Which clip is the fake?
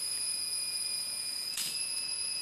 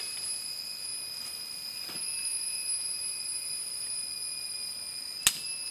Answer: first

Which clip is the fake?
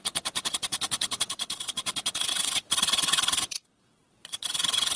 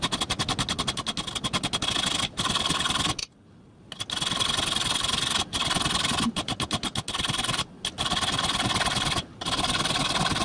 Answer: first